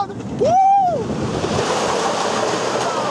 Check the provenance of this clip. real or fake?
fake